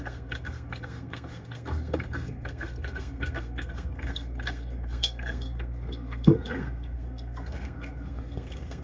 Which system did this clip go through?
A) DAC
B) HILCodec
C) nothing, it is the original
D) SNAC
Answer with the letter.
D